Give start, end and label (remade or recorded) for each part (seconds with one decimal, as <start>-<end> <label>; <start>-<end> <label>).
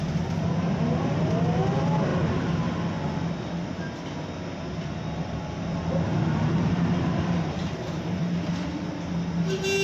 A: 0.0-5.0 recorded; 5.0-5.6 remade; 5.6-6.1 recorded; 6.1-8.5 remade; 8.5-9.8 recorded